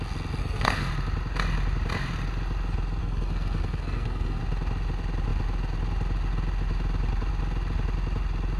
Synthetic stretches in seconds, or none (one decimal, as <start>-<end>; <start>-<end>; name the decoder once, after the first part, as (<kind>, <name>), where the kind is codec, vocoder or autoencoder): 0.4-0.9 (codec, SNAC); 3.0-4.4

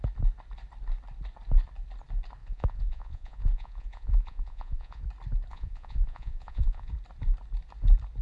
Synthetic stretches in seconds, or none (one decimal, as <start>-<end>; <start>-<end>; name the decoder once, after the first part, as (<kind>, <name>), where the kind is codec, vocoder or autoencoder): 2.4-5.0 (vocoder, Vocos); 5.5-6.9

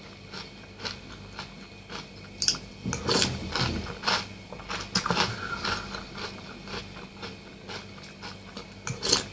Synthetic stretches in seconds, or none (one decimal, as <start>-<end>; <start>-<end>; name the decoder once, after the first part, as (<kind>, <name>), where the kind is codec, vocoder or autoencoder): none

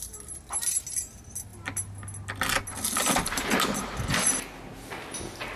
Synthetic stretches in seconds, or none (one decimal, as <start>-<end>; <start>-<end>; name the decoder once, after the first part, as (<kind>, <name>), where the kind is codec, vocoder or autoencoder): none

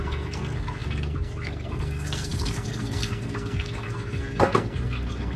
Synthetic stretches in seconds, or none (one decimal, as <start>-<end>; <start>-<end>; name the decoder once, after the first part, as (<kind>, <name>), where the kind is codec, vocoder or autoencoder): 0.0-5.4 (codec, SNAC)

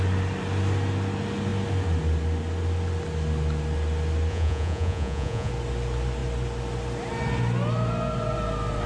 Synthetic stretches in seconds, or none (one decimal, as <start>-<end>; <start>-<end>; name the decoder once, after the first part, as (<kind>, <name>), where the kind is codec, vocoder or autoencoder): 4.3-5.5 (vocoder, Vocos)

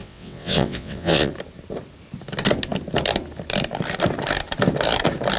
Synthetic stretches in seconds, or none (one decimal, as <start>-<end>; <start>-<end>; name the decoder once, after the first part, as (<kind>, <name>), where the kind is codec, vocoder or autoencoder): 0.0-1.3 (vocoder, WaveNeXt)

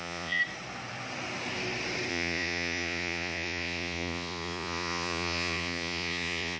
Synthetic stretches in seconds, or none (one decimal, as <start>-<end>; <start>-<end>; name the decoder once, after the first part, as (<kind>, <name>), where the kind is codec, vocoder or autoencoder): 0.0-0.4 (vocoder, Vocos); 2.1-6.6